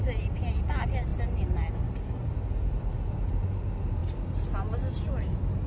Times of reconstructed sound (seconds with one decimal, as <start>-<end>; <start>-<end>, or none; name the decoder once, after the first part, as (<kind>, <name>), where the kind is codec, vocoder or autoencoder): none